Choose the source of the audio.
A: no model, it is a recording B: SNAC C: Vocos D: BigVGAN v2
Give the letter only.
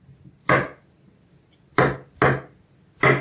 A